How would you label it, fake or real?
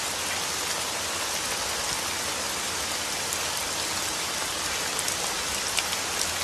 real